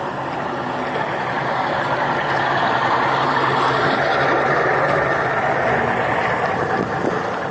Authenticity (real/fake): real